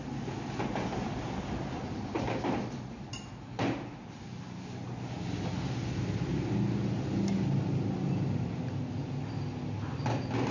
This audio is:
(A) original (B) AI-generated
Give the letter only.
A